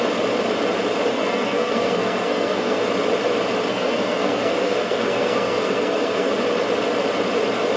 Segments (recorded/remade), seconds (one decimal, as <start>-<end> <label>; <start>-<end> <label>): 0.0-1.1 recorded; 1.1-2.8 remade; 2.8-3.7 recorded; 3.7-6.3 remade; 6.3-7.8 recorded